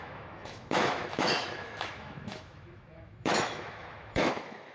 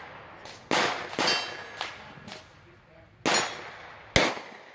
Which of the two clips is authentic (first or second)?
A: second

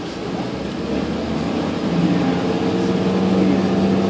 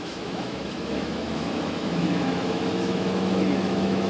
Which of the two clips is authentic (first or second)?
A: first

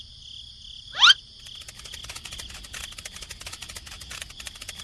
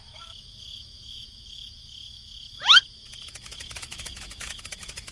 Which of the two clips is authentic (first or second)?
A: first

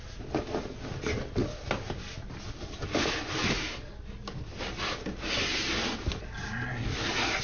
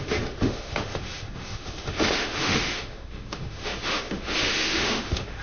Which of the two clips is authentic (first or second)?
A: first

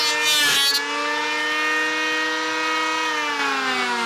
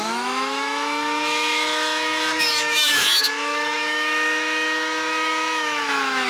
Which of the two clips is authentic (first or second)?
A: first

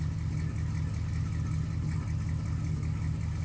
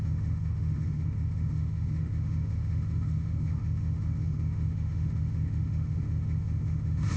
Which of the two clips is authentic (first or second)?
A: first